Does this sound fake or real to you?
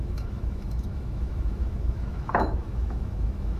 fake